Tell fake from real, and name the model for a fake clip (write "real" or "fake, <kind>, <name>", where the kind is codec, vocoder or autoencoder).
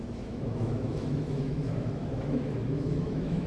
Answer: fake, autoencoder, DAC-VAE